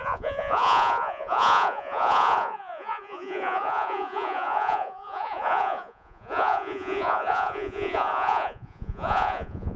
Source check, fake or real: fake